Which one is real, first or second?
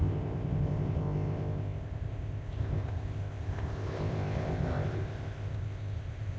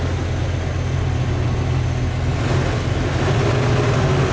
second